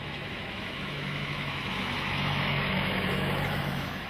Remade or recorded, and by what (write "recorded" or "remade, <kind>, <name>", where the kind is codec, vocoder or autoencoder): remade, autoencoder, DAC-VAE